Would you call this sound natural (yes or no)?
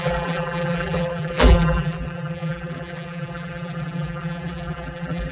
no